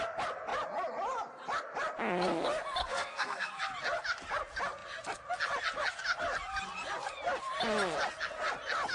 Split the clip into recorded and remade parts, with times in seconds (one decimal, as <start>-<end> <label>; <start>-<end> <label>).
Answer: 0.0-2.8 recorded; 2.8-3.6 remade; 3.6-8.9 recorded

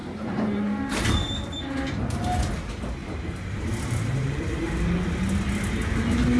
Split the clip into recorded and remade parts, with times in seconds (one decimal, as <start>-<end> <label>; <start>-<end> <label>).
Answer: 0.0-1.1 remade; 1.1-3.0 recorded; 3.0-4.7 remade; 4.7-6.4 recorded

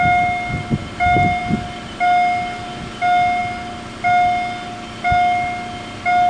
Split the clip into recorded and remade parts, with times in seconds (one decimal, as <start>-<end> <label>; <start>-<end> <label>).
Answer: 0.0-6.3 recorded

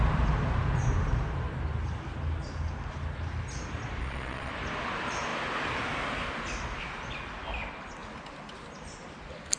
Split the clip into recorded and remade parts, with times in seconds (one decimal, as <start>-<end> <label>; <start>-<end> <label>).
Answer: 0.0-4.0 recorded; 4.0-4.5 remade; 4.5-9.6 recorded

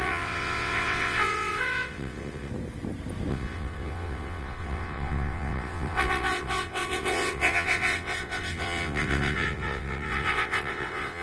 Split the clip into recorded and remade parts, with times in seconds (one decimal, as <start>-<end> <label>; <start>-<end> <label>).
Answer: 0.0-2.5 remade; 2.5-3.3 recorded; 3.3-11.2 remade

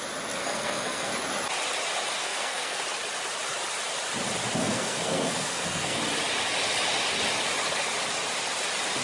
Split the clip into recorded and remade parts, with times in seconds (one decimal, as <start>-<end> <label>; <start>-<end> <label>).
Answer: 0.0-0.4 recorded; 0.4-1.1 remade; 1.1-2.2 recorded; 2.2-2.8 remade; 2.8-4.6 recorded; 4.6-6.0 remade; 6.0-9.0 recorded

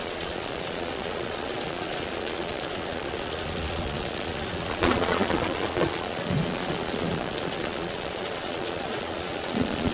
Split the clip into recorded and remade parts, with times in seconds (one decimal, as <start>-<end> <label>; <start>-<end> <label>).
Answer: 0.0-9.9 remade